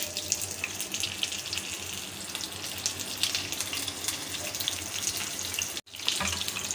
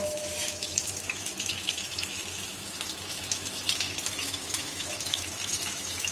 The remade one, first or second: second